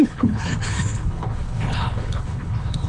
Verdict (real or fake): fake